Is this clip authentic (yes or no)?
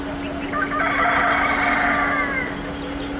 yes